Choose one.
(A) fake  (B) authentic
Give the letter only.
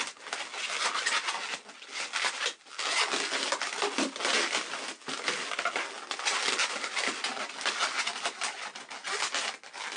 B